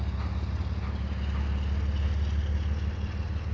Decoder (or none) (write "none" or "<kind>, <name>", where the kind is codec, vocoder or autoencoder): none